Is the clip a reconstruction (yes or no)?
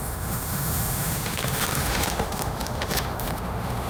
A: yes